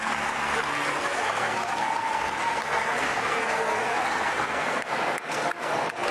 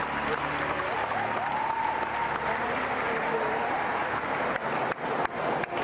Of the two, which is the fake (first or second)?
first